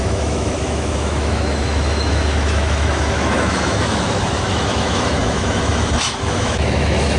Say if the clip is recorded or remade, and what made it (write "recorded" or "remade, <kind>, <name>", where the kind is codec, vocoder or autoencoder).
remade, autoencoder, DAC-VAE